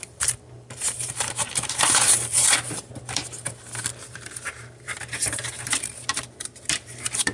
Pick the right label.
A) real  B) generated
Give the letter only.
B